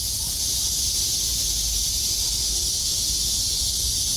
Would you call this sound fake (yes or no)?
no